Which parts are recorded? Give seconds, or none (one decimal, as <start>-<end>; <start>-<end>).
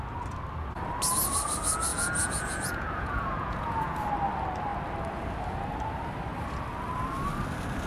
0.0-1.9; 4.0-7.9